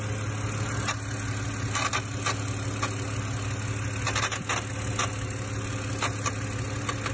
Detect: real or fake real